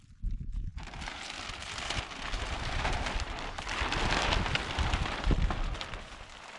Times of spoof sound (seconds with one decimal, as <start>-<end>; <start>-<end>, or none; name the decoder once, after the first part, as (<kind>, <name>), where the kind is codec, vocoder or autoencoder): none